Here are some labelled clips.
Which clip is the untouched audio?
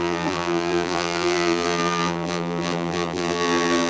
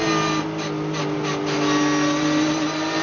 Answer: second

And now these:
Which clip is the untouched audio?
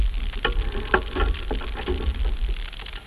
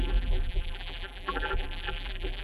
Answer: first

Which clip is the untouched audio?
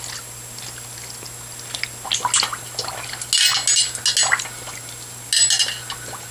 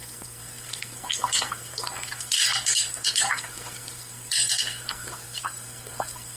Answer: first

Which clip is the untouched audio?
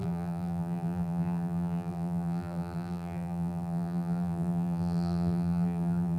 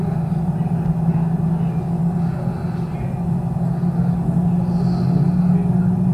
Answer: second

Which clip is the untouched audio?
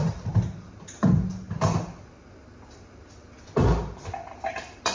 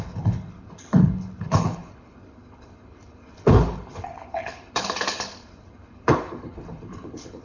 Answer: first